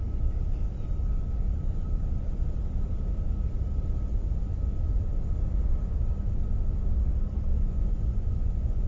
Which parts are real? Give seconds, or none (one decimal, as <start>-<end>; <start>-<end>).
0.0-7.5